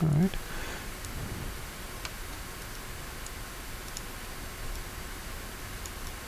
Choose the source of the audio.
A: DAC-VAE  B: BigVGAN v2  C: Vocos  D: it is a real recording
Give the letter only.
D